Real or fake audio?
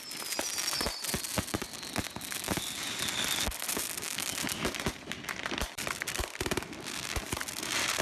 fake